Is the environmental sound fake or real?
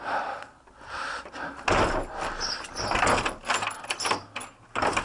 real